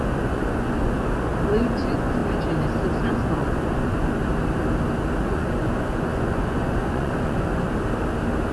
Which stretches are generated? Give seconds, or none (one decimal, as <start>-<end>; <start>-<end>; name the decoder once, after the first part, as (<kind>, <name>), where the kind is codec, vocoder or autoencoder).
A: 0.0-1.3 (vocoder, Vocos); 1.8-2.2; 3.1-4.2; 5.2-7.7